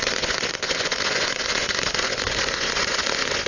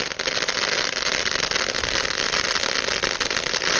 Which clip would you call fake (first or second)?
first